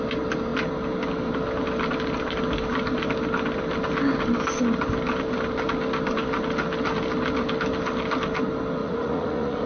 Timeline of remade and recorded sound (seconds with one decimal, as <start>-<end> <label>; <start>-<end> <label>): 0.0-8.8 recorded; 8.8-9.7 remade